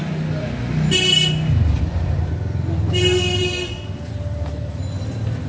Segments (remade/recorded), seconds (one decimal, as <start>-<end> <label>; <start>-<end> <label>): 0.0-5.5 recorded